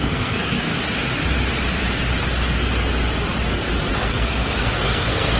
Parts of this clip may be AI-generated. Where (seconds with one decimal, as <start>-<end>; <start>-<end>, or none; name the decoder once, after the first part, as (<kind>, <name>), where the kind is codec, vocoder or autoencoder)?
0.0-0.7 (codec, SNAC); 3.9-5.4